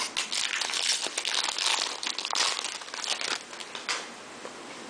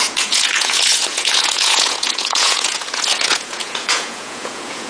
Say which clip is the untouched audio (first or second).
first